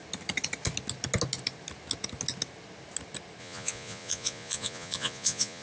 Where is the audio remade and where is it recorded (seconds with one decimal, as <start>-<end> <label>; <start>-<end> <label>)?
0.0-3.4 recorded; 3.4-5.6 remade

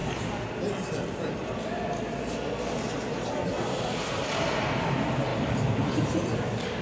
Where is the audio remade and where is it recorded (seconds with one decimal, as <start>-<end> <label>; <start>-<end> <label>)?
0.0-6.8 recorded

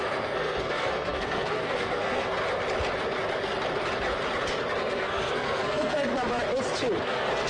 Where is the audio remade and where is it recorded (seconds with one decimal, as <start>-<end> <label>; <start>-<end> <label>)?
0.0-2.3 remade; 2.3-4.8 recorded; 4.8-6.1 remade; 6.1-7.0 recorded; 7.0-7.5 remade

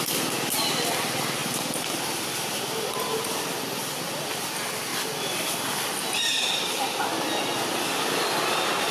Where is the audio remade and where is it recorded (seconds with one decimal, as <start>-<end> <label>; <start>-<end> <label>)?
0.0-8.9 recorded

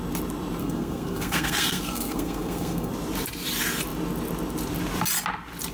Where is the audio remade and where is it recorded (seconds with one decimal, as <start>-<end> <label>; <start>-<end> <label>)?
0.0-0.6 recorded; 0.6-2.9 remade; 2.9-5.7 recorded